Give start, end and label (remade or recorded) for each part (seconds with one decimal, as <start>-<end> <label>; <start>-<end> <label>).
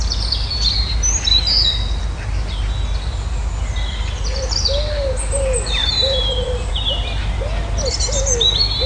0.0-5.8 recorded; 5.8-6.7 remade; 6.7-8.9 recorded